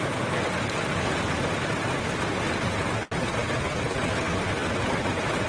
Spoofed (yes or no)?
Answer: no